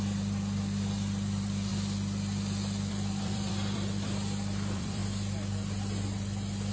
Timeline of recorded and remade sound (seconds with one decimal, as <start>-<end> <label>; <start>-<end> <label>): 0.0-1.7 remade; 1.7-2.9 recorded; 2.9-5.0 remade; 5.0-6.7 recorded